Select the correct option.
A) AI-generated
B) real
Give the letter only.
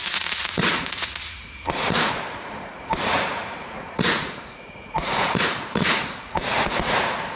A